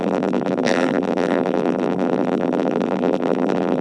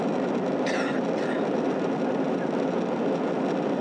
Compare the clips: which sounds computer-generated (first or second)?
first